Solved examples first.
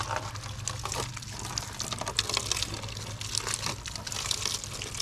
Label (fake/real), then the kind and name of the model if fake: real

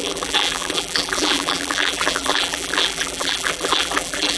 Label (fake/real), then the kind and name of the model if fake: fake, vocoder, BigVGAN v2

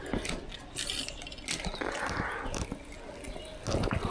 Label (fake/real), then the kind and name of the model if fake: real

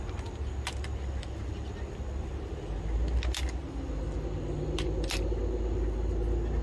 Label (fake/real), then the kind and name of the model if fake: real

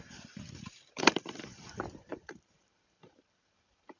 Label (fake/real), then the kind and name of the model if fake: fake, vocoder, BigVGAN v2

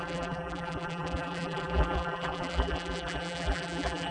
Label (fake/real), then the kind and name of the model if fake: fake, vocoder, BigVGAN v2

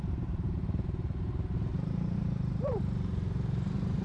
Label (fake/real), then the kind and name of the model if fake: fake, vocoder, BigVGAN v2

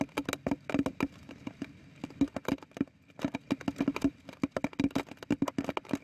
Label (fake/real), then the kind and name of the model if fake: real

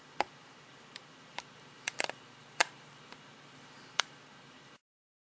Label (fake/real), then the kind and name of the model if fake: fake, vocoder, BigVGAN v2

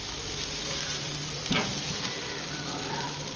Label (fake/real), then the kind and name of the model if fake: fake, vocoder, BigVGAN v2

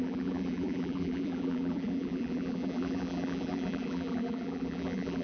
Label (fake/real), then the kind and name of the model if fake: fake, vocoder, BigVGAN v2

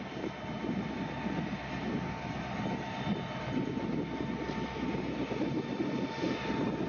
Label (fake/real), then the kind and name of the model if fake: real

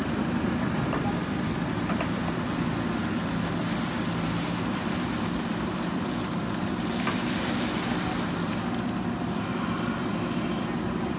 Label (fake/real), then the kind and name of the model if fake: real